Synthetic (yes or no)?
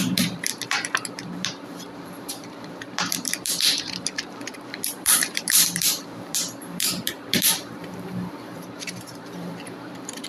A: yes